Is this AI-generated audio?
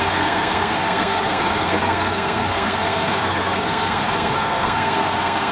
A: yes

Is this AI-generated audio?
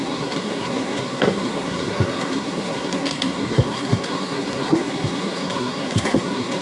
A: yes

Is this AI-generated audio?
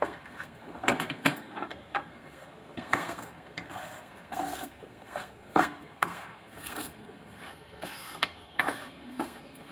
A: yes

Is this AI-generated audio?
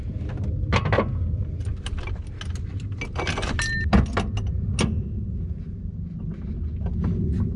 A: no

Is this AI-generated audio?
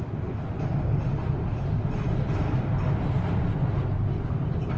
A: no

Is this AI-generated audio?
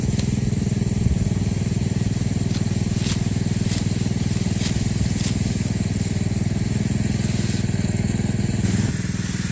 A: no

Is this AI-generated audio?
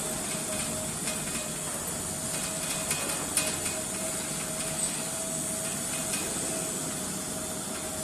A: no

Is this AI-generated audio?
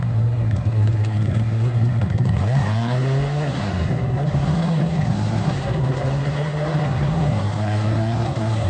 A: yes